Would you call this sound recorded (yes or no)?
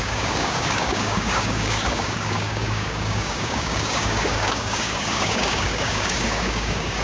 no